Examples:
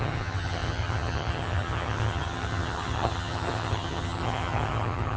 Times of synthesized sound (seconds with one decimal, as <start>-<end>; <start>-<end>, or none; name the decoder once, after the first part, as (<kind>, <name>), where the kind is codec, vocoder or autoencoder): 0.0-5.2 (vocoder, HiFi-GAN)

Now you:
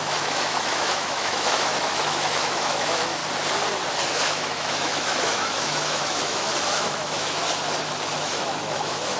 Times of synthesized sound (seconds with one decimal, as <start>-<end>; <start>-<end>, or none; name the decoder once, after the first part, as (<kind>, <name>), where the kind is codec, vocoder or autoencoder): 0.0-3.2 (autoencoder, DAC-VAE); 4.1-7.4; 8.2-9.2

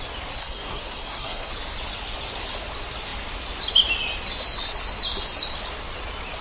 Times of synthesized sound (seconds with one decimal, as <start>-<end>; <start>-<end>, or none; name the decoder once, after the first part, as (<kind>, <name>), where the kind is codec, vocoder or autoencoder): 0.4-1.5 (codec, SNAC)

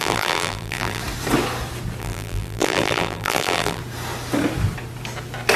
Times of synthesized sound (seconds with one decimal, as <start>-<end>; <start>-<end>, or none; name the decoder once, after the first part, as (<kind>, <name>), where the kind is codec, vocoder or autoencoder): 0.0-1.0 (vocoder, BigVGAN v2); 2.0-3.8